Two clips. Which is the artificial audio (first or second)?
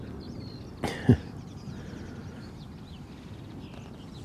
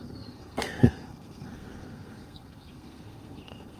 second